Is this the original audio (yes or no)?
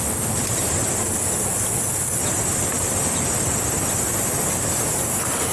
yes